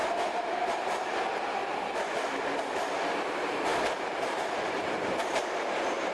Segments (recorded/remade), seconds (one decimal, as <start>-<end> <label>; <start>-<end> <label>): 0.0-0.7 recorded; 0.7-1.6 remade; 1.6-3.3 recorded; 3.3-6.1 remade